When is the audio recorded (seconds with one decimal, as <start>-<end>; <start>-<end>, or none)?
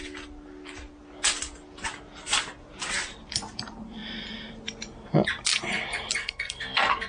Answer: 0.0-6.2